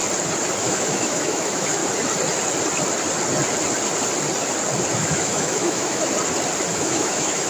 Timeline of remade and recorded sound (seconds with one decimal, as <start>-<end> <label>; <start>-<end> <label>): 0.0-0.6 recorded; 0.6-1.8 remade; 1.8-5.0 recorded; 5.0-6.1 remade; 6.1-6.7 recorded; 6.7-7.5 remade